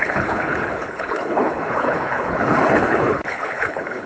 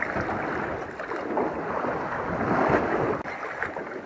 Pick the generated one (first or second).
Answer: first